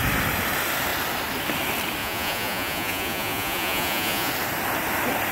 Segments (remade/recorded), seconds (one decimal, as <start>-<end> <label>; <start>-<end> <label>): 0.0-2.0 recorded; 2.0-4.3 remade; 4.3-5.3 recorded